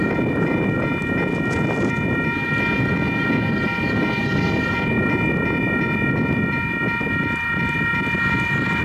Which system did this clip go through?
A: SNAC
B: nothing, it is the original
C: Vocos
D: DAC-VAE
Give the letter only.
B